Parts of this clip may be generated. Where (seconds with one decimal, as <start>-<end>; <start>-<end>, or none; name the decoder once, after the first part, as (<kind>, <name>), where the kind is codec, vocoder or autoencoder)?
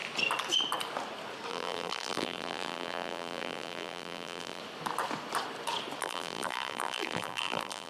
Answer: 1.5-4.6 (vocoder, BigVGAN v2); 6.0-7.9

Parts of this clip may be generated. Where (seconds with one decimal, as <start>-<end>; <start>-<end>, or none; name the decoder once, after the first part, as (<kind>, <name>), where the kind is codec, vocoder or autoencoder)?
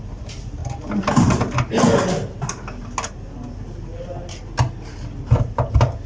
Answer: none